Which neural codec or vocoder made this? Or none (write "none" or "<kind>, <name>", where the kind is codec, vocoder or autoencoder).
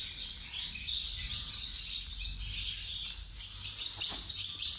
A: none